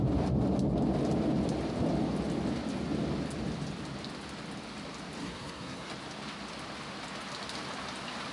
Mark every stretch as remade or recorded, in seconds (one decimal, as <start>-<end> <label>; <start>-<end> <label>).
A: 0.0-5.2 recorded; 5.2-5.9 remade; 5.9-8.3 recorded